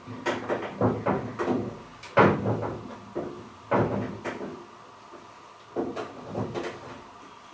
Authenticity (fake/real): real